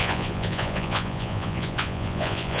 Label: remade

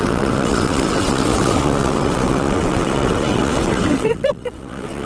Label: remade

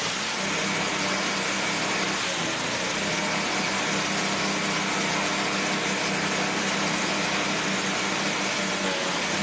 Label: recorded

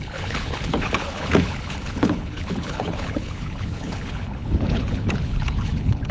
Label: remade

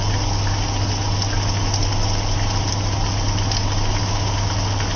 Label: recorded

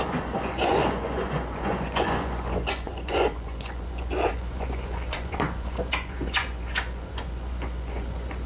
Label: remade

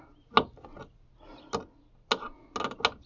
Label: recorded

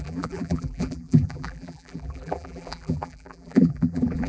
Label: remade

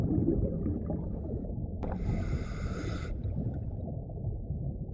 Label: remade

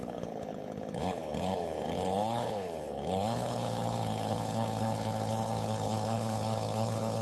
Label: remade